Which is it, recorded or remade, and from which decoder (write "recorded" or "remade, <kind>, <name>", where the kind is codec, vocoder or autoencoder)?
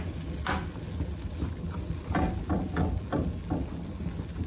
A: recorded